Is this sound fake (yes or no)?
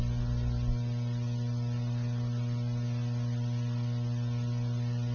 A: no